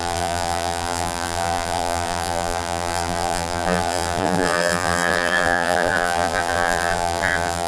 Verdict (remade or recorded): remade